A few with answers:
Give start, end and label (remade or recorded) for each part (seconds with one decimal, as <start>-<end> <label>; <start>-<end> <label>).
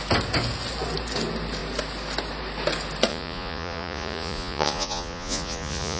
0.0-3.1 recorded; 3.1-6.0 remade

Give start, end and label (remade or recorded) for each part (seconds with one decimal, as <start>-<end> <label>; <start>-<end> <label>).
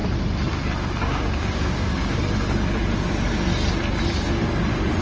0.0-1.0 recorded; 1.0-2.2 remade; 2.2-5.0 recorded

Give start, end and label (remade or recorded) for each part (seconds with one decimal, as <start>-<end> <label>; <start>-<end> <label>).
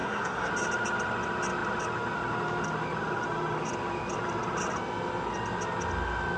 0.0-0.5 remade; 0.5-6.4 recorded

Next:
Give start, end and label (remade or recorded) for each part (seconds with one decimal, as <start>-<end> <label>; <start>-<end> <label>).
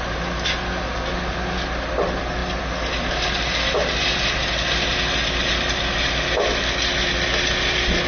0.0-8.1 recorded